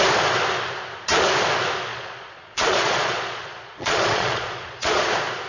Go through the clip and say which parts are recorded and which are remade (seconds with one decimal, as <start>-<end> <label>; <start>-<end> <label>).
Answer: 0.0-1.9 recorded; 1.9-5.1 remade; 5.1-5.5 recorded